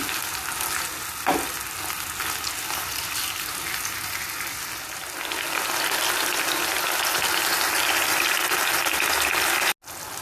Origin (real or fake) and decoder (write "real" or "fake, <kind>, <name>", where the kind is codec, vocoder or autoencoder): real